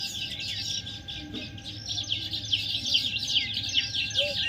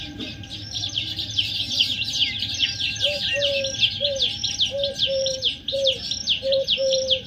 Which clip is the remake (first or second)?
second